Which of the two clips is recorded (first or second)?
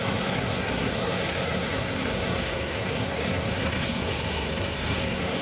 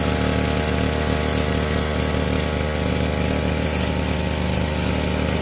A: second